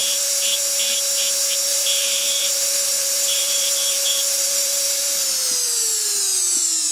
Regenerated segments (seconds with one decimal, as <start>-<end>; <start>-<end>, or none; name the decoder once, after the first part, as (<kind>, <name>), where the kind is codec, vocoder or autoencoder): 0.0-0.6 (vocoder, BigVGAN v2); 1.7-5.8